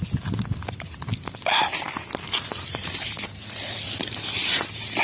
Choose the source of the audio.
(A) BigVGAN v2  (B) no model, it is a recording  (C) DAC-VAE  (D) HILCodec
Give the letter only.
A